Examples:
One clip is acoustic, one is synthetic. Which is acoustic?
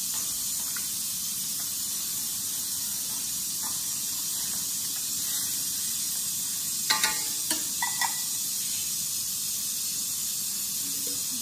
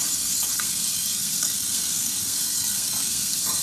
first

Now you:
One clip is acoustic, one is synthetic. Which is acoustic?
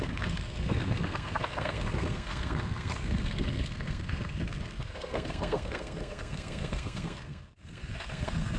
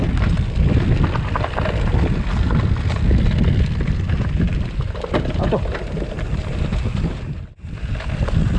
second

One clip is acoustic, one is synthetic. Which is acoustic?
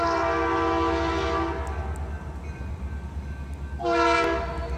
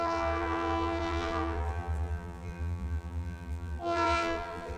first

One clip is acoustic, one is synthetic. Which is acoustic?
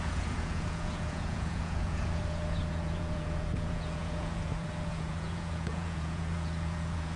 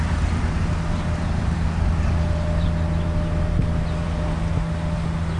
second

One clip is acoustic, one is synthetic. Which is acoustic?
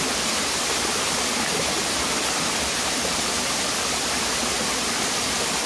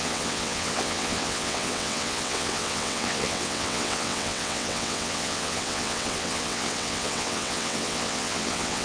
first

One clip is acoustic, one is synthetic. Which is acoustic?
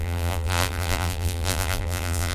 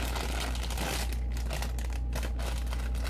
second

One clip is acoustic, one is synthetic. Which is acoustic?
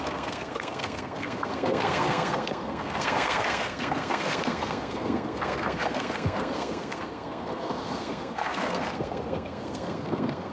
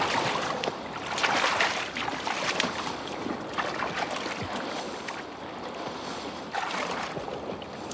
second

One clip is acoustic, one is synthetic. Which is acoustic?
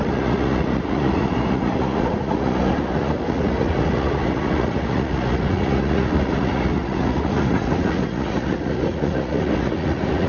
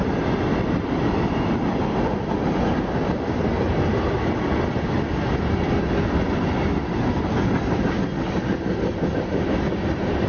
second